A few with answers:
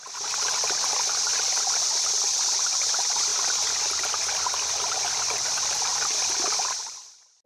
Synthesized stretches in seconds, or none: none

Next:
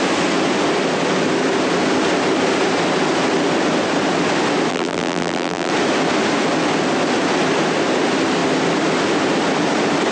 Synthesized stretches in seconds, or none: 4.7-5.7 (vocoder, BigVGAN v2)

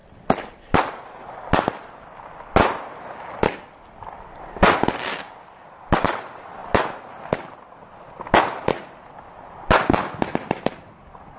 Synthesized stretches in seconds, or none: none

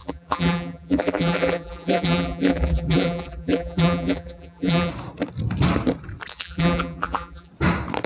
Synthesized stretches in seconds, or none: 0.0-4.9 (vocoder, BigVGAN v2); 6.3-7.5